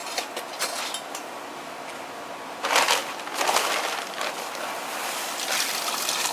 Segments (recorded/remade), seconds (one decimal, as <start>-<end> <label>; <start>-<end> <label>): 0.0-3.0 recorded; 3.0-4.4 remade; 4.4-6.3 recorded